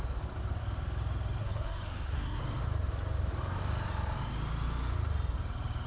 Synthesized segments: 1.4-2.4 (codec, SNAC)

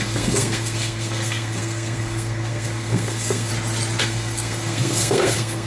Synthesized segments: 0.0-3.5 (codec, SNAC); 4.0-5.7